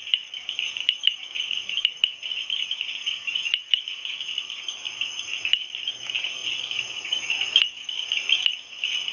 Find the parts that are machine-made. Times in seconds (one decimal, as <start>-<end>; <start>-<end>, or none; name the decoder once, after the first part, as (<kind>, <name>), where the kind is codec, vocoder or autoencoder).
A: 0.0-9.1 (codec, DAC)